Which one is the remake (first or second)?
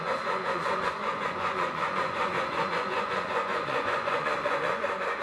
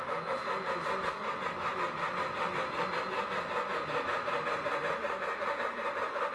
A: first